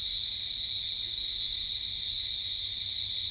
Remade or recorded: remade